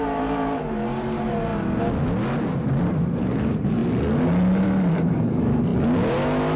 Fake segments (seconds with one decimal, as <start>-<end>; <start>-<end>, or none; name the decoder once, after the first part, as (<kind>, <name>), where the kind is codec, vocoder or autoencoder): 0.0-1.5 (vocoder, BigVGAN v2); 2.8-3.8; 4.9-5.7